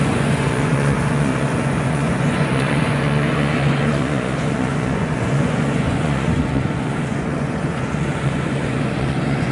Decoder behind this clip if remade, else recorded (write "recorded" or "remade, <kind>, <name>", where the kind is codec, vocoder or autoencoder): remade, vocoder, Vocos